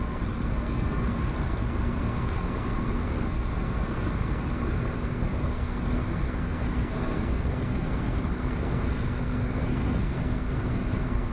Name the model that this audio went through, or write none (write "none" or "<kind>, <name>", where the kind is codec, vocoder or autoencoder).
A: codec, SNAC